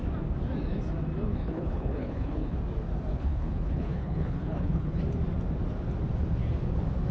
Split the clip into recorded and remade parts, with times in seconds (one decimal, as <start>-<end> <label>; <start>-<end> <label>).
0.0-1.3 recorded; 1.3-2.6 remade; 2.6-3.1 recorded; 3.1-5.0 remade; 5.0-7.1 recorded